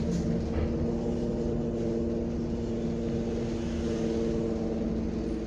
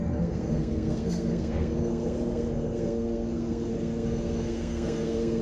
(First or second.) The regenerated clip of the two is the second